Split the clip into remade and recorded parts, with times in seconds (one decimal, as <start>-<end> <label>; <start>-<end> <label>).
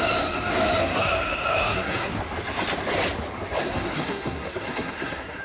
0.0-0.8 recorded; 0.8-2.1 remade; 2.1-3.6 recorded; 3.6-5.4 remade